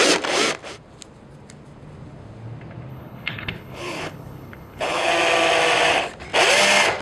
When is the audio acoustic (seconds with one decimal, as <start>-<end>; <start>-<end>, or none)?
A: 0.0-2.9; 5.1-7.0